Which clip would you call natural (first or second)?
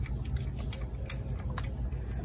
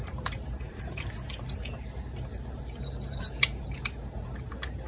first